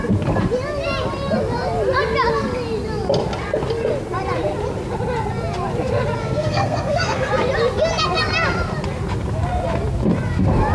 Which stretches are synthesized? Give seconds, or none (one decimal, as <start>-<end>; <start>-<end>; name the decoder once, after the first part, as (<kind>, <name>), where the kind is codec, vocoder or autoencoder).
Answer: 6.2-7.3 (codec, SNAC)